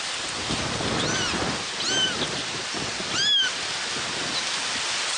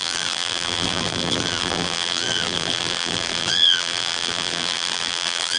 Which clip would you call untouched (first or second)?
first